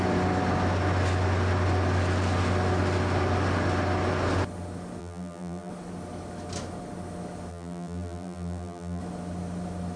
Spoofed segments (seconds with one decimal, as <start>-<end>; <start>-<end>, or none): 5.0-5.7; 7.5-9.0